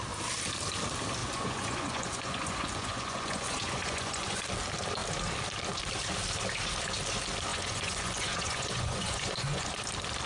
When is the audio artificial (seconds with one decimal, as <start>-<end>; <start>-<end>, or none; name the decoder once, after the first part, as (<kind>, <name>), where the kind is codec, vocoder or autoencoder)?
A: 1.2-4.4 (vocoder, Vocos); 7.5-9.8

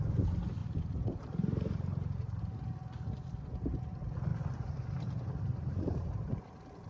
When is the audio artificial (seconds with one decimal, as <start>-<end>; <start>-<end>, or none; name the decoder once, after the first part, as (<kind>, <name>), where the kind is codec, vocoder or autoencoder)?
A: 0.6-2.4 (vocoder, BigVGAN v2); 4.3-6.4

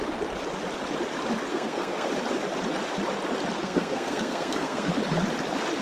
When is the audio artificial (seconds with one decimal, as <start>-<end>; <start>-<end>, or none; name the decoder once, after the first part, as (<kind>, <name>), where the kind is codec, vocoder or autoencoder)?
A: 1.5-2.1 (codec, SNAC); 3.6-4.9